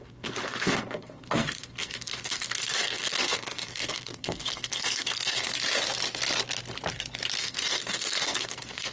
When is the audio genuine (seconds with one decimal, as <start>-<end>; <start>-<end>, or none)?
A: 5.5-7.4